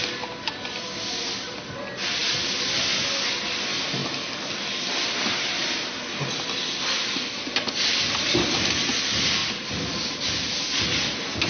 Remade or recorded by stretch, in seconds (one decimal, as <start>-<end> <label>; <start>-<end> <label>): 0.0-2.2 recorded; 2.2-3.0 remade; 3.0-11.5 recorded